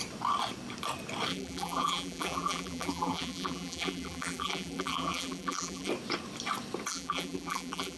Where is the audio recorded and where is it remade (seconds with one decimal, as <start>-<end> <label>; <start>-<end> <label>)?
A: 0.0-1.3 recorded; 1.3-5.9 remade; 5.9-6.9 recorded; 6.9-8.0 remade